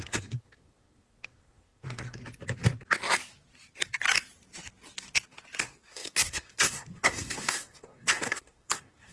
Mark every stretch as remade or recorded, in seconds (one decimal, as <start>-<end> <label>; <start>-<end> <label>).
0.0-2.2 remade; 2.2-5.6 recorded; 5.6-9.1 remade